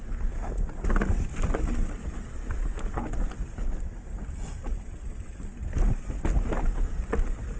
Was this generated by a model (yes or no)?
no